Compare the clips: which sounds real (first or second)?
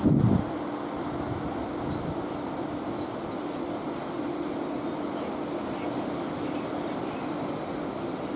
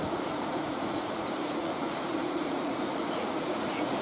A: first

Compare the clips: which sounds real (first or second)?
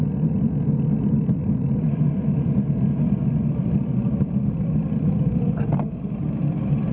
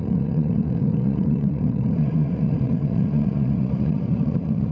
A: first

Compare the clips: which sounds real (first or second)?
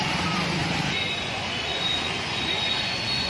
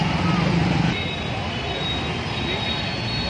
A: second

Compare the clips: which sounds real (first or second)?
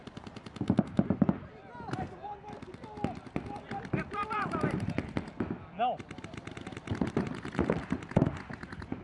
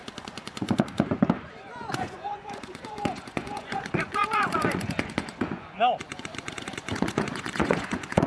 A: first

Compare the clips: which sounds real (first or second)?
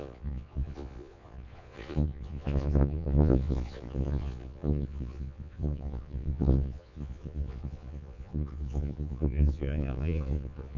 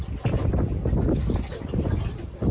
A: second